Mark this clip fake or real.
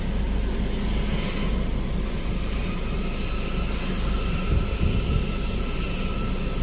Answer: real